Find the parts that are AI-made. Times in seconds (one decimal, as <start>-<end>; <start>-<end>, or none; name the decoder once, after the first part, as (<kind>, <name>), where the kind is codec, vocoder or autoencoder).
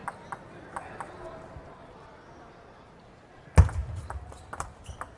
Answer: none